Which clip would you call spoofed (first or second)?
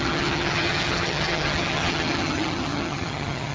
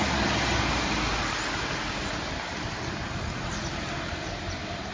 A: first